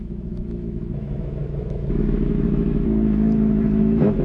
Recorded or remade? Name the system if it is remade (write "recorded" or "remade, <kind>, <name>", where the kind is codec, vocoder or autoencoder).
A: remade, autoencoder, DAC-VAE